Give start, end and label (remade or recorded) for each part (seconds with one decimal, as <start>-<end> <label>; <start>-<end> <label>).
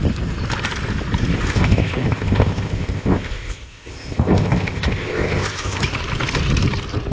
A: 0.0-1.5 recorded; 1.5-5.8 remade; 5.8-7.1 recorded